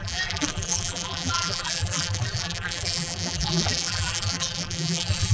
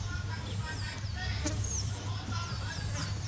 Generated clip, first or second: first